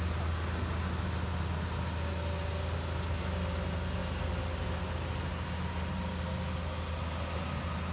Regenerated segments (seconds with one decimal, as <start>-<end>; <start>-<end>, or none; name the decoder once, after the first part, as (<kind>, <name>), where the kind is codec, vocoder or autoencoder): none

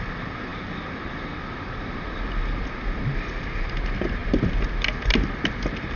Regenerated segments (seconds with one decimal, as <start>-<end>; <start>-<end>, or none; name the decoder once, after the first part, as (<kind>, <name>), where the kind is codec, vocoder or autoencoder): none